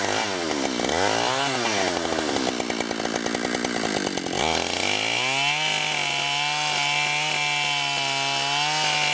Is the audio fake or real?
real